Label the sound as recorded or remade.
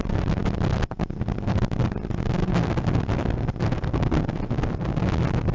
recorded